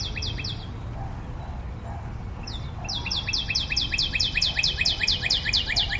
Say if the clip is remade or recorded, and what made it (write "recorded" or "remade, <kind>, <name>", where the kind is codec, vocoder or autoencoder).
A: recorded